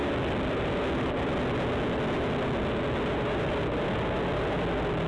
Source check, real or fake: real